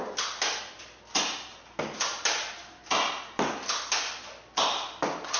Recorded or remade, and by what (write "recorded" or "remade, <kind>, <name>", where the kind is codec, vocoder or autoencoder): recorded